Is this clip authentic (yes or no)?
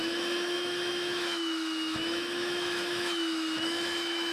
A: no